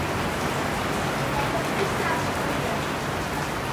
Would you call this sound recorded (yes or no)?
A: yes